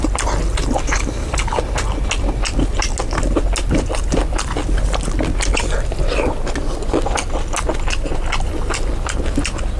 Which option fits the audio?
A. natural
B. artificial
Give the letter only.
A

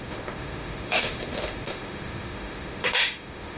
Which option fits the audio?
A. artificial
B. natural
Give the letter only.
A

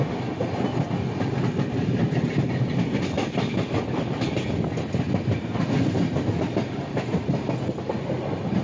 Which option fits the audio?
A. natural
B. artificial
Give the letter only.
A